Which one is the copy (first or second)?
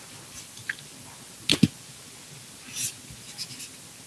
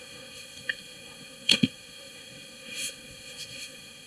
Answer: second